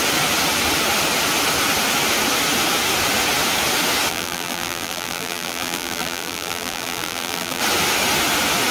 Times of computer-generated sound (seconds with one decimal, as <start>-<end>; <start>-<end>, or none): 4.1-7.6